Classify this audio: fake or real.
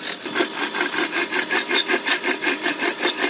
real